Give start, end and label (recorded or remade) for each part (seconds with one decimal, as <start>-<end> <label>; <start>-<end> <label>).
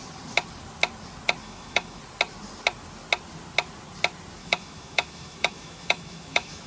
0.0-1.4 recorded; 1.4-2.0 remade; 2.0-4.4 recorded; 4.4-6.7 remade